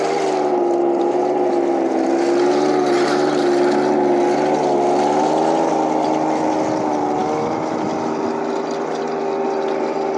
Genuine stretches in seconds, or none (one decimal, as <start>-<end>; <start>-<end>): 0.0-10.2